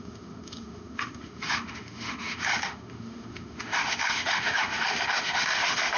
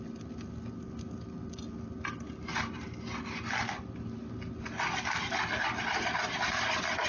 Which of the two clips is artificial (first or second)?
first